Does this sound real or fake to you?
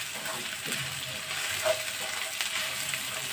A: real